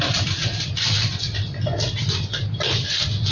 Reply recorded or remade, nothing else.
recorded